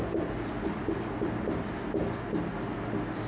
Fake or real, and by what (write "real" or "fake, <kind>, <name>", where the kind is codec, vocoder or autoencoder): real